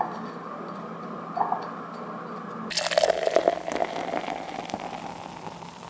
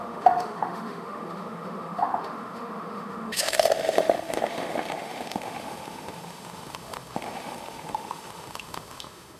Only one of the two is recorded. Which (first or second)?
first